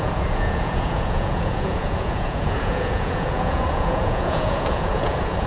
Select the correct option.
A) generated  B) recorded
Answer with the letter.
A